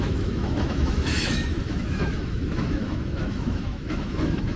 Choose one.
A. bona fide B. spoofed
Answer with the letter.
B